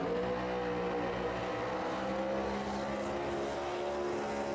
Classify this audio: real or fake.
real